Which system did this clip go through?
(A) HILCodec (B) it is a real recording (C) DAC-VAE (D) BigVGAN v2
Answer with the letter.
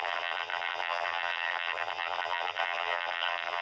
D